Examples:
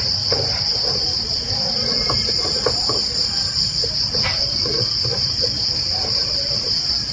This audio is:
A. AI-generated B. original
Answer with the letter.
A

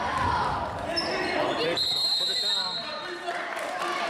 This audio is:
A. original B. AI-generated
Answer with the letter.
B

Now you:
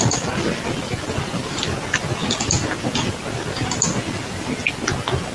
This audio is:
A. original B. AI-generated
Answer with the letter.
A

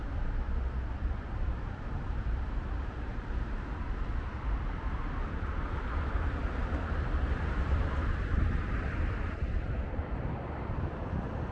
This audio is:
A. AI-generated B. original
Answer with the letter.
A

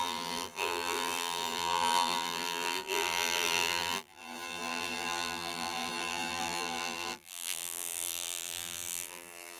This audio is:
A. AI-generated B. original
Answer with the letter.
A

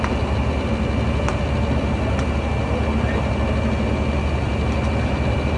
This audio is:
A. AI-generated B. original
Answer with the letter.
B